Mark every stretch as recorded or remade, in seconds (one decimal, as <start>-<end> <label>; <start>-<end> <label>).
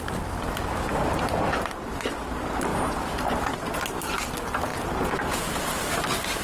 0.0-4.7 recorded; 4.7-5.5 remade; 5.5-6.4 recorded